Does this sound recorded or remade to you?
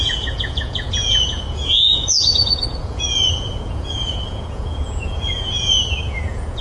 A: remade